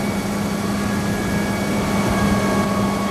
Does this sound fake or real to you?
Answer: real